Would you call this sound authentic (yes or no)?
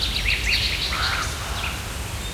yes